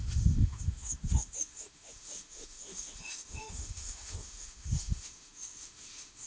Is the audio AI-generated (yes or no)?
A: yes